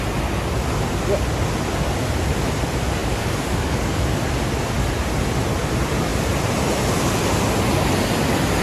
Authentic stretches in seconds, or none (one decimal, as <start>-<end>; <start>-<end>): 0.0-3.0; 4.0-8.6